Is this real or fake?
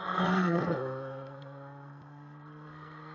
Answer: fake